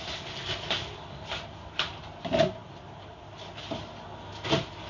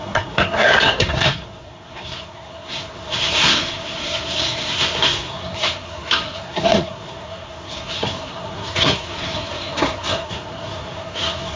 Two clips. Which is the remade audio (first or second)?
second